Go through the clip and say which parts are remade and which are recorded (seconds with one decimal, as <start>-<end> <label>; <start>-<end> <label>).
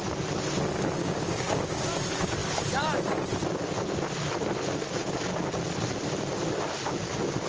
0.0-1.0 recorded; 1.0-2.0 remade; 2.0-7.5 recorded